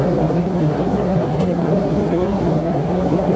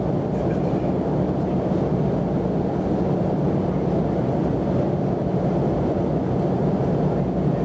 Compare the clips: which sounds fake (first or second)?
first